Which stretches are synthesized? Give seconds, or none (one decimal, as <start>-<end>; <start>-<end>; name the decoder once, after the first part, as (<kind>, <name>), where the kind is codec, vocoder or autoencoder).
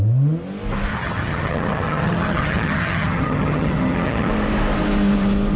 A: 0.9-4.3 (vocoder, HiFi-GAN)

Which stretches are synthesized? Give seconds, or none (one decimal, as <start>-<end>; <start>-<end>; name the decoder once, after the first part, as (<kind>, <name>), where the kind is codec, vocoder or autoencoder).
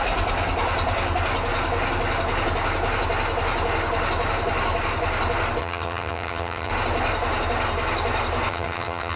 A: 5.6-6.7 (vocoder, HiFi-GAN); 8.5-9.2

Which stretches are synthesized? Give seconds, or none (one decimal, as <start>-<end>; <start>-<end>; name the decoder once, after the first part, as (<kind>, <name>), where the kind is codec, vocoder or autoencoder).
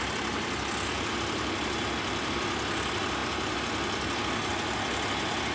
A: none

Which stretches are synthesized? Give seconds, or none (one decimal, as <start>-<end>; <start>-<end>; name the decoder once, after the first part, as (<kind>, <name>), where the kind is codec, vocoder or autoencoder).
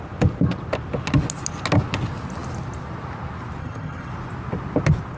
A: 3.6-4.1 (vocoder, HiFi-GAN)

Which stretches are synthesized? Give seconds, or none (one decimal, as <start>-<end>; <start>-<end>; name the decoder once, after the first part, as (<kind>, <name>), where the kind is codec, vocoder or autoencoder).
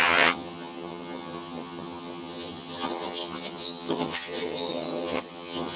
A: 0.0-5.8 (vocoder, HiFi-GAN)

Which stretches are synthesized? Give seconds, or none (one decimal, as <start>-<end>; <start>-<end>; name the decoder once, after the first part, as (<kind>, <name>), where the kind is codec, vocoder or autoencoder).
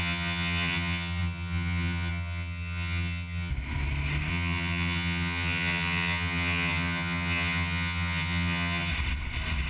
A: 0.0-3.5 (vocoder, HiFi-GAN); 4.3-8.9